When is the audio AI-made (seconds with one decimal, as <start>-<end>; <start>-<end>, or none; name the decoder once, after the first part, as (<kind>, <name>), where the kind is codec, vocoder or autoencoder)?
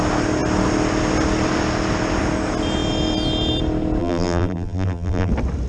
4.0-5.3 (vocoder, BigVGAN v2)